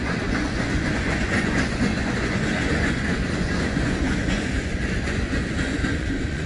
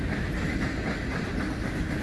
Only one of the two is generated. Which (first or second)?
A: first